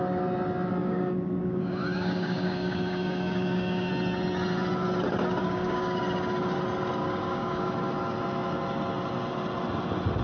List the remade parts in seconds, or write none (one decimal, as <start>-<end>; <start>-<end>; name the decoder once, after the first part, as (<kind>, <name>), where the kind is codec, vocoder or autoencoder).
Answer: 0.8-3.9 (codec, DAC); 5.4-6.0; 7.0-7.7